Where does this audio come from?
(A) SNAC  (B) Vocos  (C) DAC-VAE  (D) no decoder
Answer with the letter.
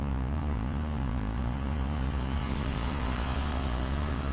B